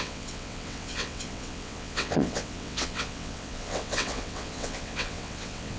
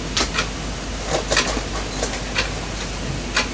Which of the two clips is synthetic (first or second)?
first